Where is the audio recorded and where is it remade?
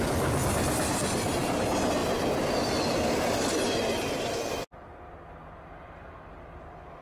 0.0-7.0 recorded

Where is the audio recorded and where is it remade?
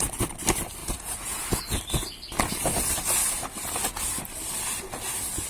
0.0-0.8 recorded; 0.8-1.8 remade; 1.8-5.5 recorded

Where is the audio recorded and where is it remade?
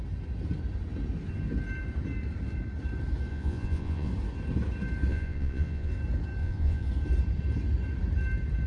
0.0-3.3 recorded; 3.3-4.1 remade; 4.1-5.1 recorded; 5.1-5.9 remade; 5.9-6.4 recorded; 6.4-6.9 remade; 6.9-8.7 recorded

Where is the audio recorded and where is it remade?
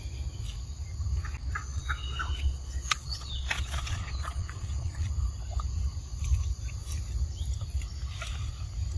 0.0-1.6 recorded; 1.6-5.1 remade; 5.1-9.0 recorded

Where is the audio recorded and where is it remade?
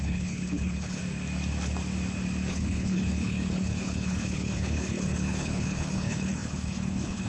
0.0-1.0 remade; 1.0-2.5 recorded; 2.5-7.3 remade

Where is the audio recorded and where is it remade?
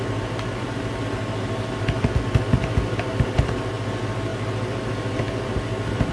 0.0-6.1 recorded